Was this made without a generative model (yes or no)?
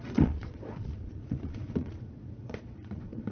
no